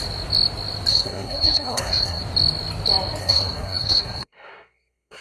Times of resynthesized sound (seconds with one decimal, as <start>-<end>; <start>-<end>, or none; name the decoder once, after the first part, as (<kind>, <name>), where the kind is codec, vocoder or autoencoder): 0.9-2.2 (codec, SNAC); 3.2-5.2